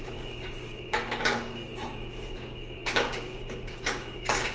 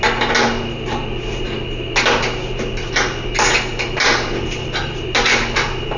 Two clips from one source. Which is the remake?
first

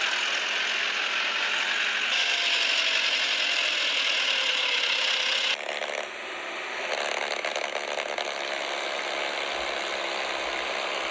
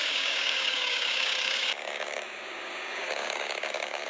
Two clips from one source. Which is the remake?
second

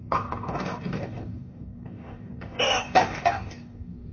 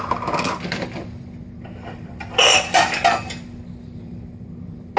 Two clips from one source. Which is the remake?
first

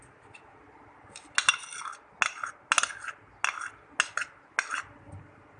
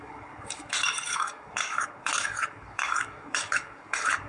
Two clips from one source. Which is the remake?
second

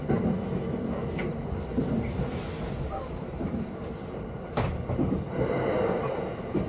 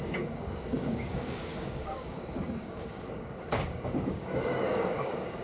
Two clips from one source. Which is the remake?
second